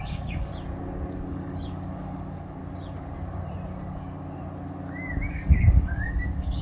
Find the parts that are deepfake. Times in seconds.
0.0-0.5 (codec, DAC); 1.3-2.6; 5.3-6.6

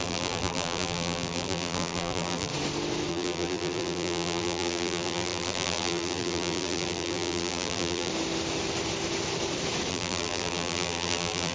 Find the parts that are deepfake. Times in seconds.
0.0-2.5 (vocoder, BigVGAN v2); 3.1-8.1; 9.9-11.5

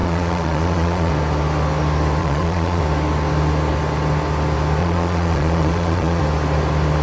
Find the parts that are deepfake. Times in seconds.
0.0-1.1 (vocoder, Vocos); 2.2-2.8; 4.8-6.2

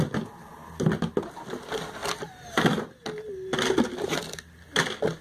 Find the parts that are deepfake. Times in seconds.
none